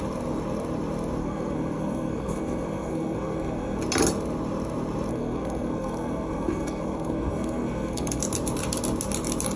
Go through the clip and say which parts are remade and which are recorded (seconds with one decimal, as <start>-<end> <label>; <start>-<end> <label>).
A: 0.0-1.2 recorded; 1.2-3.8 remade; 3.8-5.1 recorded; 5.1-8.2 remade; 8.2-9.6 recorded